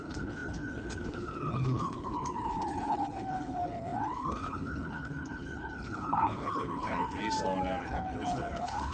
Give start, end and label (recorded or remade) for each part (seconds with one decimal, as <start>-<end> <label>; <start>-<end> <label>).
0.0-7.2 remade; 7.2-7.8 recorded; 7.8-8.9 remade